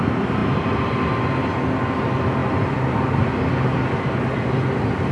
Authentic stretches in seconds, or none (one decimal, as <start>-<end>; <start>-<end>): 0.0-5.1